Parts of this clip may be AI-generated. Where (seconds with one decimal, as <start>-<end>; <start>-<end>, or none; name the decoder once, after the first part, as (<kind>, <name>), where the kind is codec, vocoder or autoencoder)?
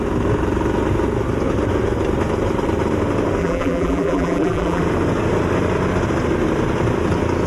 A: 3.4-4.8 (vocoder, BigVGAN v2)